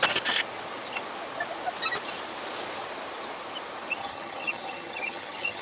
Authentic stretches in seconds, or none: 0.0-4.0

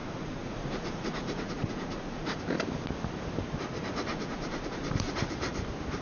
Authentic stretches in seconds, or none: 2.4-4.1; 5.1-6.0

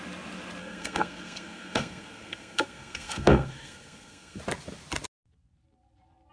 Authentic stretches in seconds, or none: 0.0-0.6; 4.4-6.3

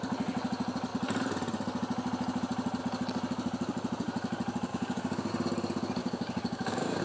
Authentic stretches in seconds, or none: 0.0-4.7; 5.3-6.0